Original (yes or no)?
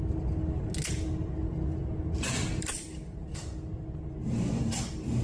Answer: yes